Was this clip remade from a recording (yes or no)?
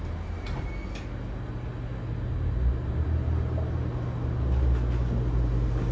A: no